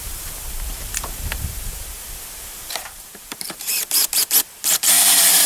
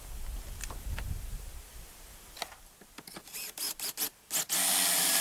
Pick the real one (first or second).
second